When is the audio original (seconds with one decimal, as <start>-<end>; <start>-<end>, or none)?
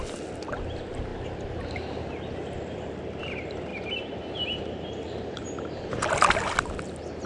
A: 0.0-2.4; 3.0-7.3